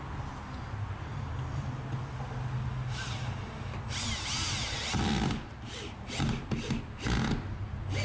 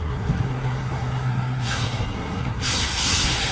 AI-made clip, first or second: second